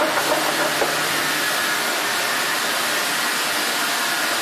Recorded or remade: recorded